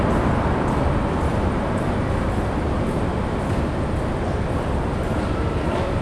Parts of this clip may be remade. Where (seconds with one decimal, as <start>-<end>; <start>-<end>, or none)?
none